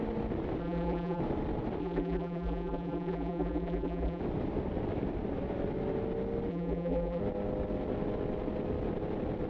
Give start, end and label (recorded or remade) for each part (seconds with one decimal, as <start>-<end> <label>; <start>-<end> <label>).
0.0-0.6 recorded; 0.6-1.2 remade; 1.2-1.8 recorded; 1.8-4.2 remade; 4.2-6.5 recorded; 6.5-7.2 remade; 7.2-9.5 recorded